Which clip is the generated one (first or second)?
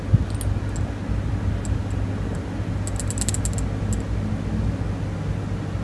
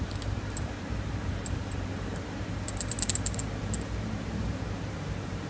second